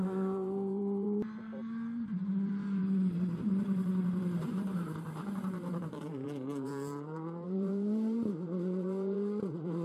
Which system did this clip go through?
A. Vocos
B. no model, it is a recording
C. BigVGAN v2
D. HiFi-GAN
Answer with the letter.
C